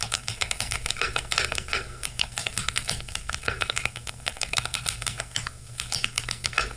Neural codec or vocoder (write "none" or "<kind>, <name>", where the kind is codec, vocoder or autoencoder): codec, SNAC